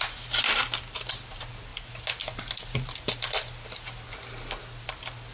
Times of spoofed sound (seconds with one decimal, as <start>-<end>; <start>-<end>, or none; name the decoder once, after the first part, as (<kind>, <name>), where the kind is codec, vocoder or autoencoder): none